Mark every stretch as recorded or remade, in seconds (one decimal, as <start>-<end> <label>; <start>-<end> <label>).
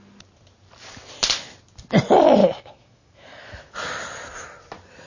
0.0-2.4 recorded; 2.4-3.7 remade; 3.7-5.1 recorded